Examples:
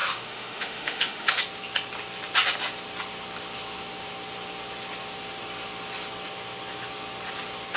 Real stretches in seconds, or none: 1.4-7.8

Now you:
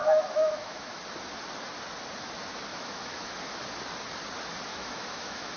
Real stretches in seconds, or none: 1.0-2.7; 3.4-4.7

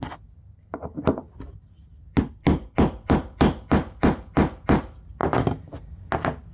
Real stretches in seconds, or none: 0.0-6.5

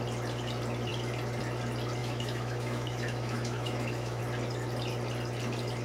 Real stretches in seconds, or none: 0.0-2.0; 4.2-5.8

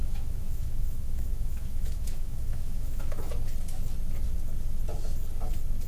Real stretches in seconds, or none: 3.3-5.9

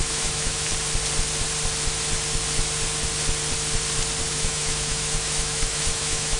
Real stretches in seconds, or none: 0.7-4.3